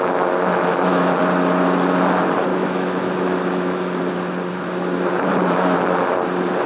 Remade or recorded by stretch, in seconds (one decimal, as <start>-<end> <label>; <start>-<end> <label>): 0.0-0.7 recorded; 0.7-1.2 remade; 1.2-2.5 recorded; 2.5-4.0 remade; 4.0-6.7 recorded